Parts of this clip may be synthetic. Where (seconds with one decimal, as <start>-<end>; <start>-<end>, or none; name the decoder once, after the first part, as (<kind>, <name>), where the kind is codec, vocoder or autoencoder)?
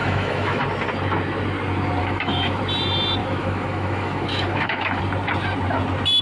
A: 0.0-0.6 (autoencoder, DAC-VAE); 2.0-2.6; 3.2-5.0